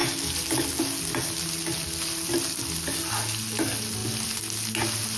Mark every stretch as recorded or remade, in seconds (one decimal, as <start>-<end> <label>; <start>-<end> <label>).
0.0-5.2 recorded